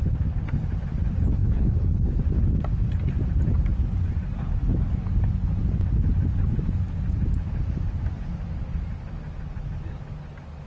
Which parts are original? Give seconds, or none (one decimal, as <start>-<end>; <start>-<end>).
0.0-1.4; 2.2-10.7